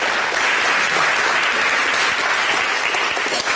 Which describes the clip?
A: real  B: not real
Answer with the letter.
A